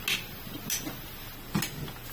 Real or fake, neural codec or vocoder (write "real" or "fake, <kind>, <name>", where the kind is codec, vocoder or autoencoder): real